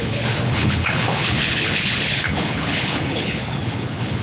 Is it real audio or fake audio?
fake